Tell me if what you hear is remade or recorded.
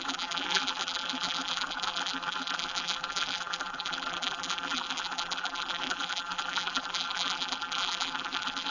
remade